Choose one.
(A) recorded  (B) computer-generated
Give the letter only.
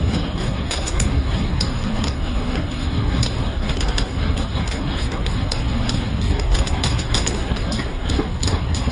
B